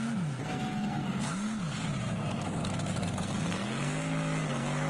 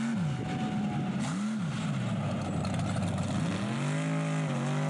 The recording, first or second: second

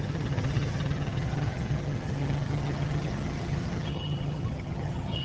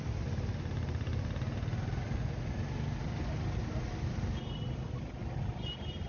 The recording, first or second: second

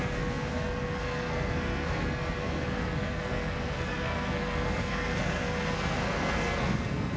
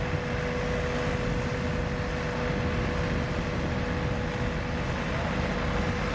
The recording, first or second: second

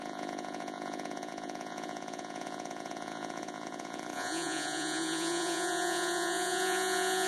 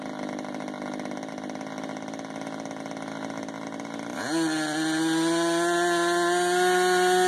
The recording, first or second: second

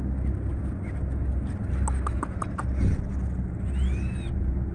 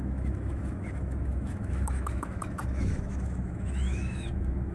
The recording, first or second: first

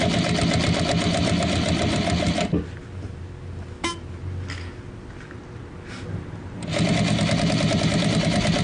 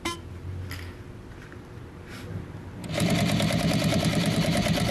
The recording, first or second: first